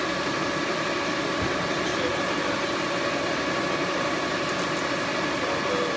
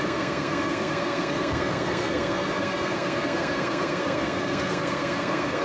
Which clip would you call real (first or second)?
first